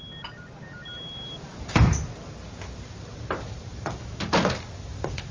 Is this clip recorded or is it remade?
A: recorded